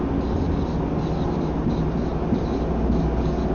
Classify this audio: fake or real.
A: real